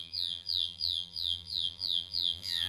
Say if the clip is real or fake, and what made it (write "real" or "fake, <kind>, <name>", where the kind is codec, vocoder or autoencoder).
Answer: fake, vocoder, BigVGAN v2